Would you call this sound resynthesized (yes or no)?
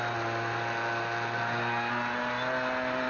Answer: no